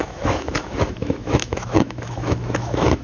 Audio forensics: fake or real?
fake